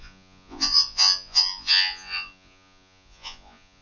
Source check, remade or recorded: remade